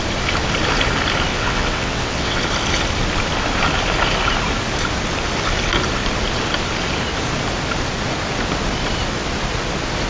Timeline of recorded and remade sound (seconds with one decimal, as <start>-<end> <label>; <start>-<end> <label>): 0.0-1.3 recorded; 1.3-2.4 remade; 2.4-10.1 recorded